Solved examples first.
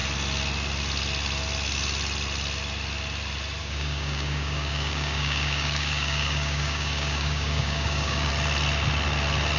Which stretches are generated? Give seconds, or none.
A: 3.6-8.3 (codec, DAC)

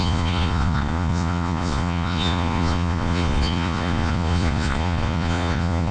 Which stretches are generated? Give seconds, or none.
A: 0.0-5.9 (vocoder, Vocos)

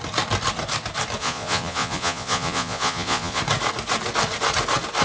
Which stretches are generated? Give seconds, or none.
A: 1.2-3.4 (vocoder, Vocos)

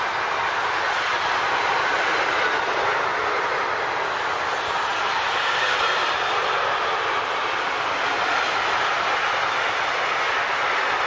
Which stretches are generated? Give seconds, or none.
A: 3.1-6.1 (vocoder, BigVGAN v2); 8.3-9.9

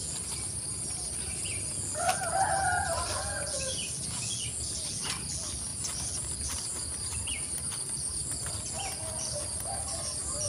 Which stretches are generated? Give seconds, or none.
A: none

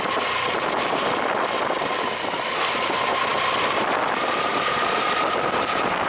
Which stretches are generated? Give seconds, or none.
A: none